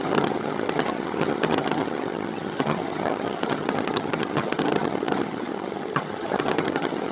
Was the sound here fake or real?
fake